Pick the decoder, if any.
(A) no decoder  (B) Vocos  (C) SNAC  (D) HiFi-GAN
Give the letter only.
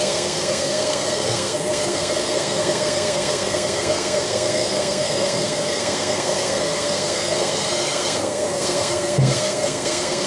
C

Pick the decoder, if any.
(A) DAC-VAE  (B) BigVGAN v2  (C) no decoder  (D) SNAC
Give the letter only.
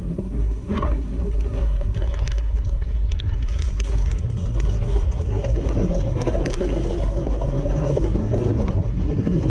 D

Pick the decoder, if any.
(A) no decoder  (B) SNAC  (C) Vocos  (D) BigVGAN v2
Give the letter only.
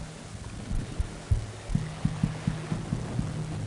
A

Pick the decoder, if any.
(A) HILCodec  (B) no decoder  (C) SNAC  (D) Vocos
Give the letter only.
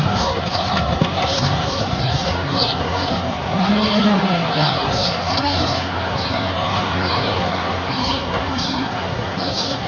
C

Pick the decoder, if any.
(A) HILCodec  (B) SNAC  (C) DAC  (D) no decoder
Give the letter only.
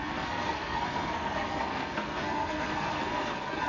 B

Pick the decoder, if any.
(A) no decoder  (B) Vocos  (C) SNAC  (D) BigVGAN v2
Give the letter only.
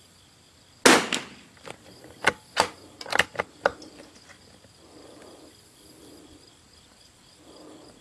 A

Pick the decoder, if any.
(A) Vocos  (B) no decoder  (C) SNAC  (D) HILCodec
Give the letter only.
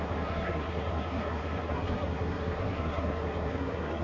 C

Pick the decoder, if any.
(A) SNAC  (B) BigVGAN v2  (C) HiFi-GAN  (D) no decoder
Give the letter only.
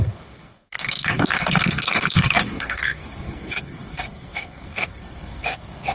A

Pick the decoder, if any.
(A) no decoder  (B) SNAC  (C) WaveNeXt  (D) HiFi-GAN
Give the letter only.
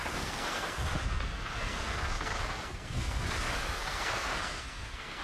B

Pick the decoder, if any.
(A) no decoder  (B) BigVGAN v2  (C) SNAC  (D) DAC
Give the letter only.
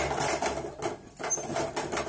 A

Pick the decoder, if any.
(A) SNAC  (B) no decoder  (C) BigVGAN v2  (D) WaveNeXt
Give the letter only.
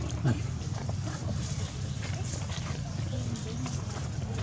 B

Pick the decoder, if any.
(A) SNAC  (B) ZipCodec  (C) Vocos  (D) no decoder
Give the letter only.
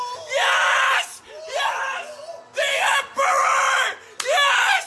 D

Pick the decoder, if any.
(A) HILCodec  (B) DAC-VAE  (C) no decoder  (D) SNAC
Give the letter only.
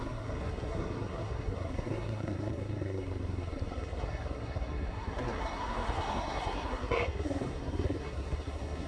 D